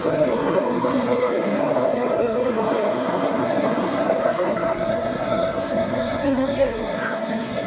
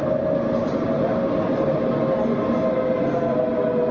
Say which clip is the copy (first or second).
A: first